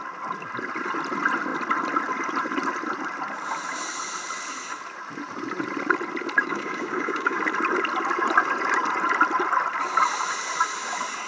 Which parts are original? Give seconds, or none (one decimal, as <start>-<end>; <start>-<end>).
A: 0.0-6.4; 7.4-11.3